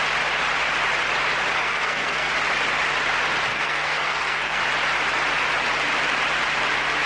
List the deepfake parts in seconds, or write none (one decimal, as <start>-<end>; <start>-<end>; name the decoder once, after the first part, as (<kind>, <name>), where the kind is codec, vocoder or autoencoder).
1.6-2.3 (codec, SNAC); 3.5-4.6